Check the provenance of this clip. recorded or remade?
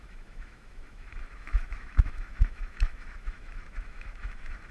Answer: remade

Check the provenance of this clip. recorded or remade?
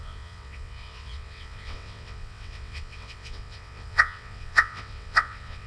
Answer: remade